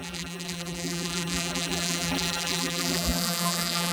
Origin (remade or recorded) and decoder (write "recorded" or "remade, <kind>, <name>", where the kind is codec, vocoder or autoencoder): remade, vocoder, BigVGAN v2